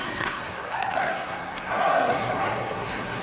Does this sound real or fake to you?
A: fake